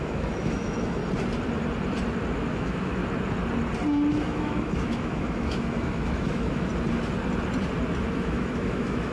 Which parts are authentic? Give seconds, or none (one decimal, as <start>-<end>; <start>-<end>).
1.0-2.5; 3.0-4.1; 6.7-8.1